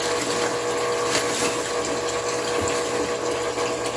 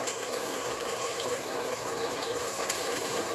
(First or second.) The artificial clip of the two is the second